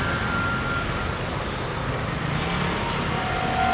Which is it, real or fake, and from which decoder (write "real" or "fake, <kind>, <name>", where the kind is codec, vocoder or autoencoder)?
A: real